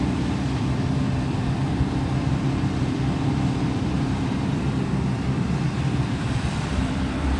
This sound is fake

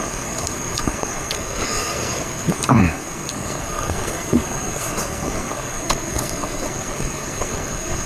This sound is fake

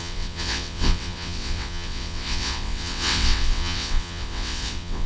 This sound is fake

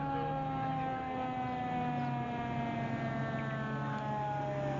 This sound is real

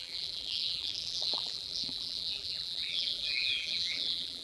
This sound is fake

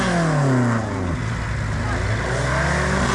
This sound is real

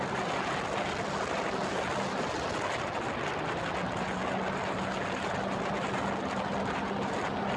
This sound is real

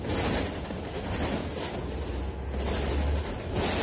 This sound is real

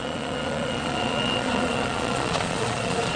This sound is fake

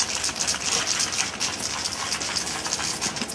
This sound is real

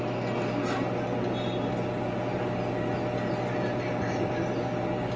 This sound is real